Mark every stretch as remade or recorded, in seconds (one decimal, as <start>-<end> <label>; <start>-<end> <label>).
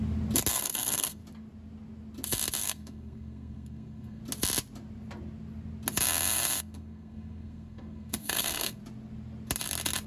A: 0.0-0.5 recorded; 0.5-1.2 remade; 1.2-2.6 recorded; 2.6-4.2 remade; 4.2-6.6 recorded; 6.6-8.8 remade; 8.8-10.1 recorded